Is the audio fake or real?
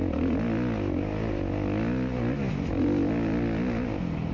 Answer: real